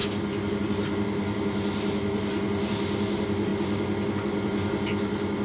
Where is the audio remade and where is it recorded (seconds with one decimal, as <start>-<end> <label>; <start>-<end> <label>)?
0.0-5.4 recorded